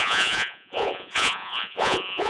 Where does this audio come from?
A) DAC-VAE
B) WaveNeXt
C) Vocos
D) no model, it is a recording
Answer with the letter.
C